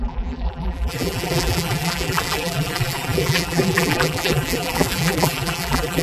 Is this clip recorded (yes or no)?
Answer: no